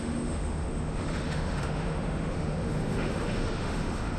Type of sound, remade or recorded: remade